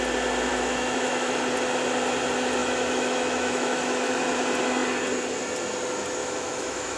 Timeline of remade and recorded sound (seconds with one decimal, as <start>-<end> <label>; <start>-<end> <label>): 0.0-0.5 recorded; 0.5-1.4 remade; 1.4-2.6 recorded; 2.6-4.2 remade; 4.2-6.2 recorded; 6.2-7.0 remade

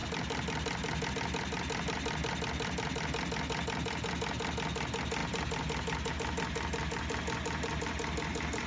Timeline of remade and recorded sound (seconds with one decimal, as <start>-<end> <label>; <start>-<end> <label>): 0.0-8.7 recorded